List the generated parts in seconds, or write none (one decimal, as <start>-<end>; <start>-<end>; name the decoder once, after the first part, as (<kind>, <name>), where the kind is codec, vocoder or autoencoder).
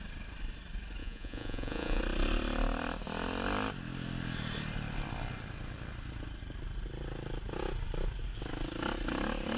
1.0-2.0 (vocoder, Vocos)